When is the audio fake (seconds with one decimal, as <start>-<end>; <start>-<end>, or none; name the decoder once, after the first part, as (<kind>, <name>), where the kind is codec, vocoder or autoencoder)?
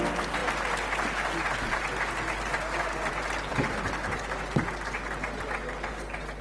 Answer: none